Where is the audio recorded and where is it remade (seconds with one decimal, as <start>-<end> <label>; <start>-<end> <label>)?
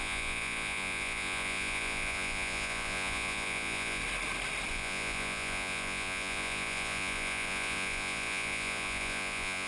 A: 0.0-4.0 remade; 4.0-4.7 recorded; 4.7-9.7 remade